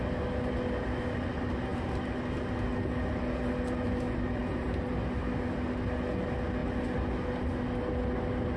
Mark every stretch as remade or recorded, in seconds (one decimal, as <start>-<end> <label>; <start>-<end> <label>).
0.0-8.6 recorded